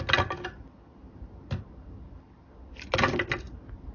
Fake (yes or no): no